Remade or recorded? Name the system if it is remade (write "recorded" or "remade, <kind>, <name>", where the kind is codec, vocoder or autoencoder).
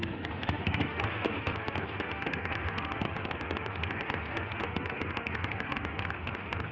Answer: remade, autoencoder, DAC-VAE